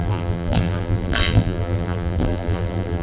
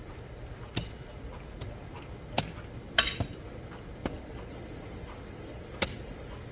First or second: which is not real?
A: first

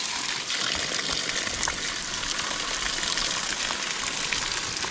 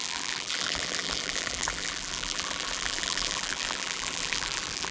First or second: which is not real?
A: second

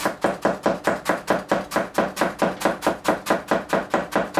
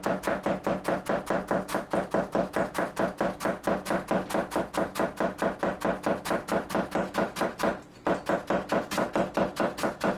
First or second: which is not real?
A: first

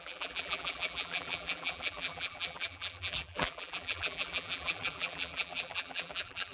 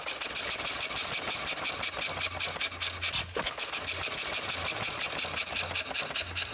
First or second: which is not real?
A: first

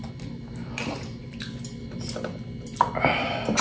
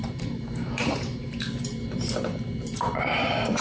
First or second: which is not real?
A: second